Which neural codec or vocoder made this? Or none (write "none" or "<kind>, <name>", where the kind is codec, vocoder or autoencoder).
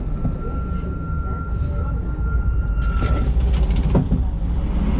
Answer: none